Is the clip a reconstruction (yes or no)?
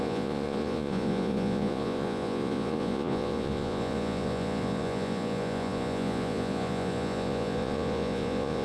yes